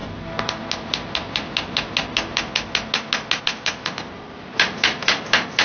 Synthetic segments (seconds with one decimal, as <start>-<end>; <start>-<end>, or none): none